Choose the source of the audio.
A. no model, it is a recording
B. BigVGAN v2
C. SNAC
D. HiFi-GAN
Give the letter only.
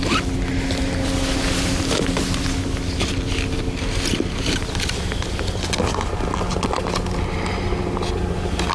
A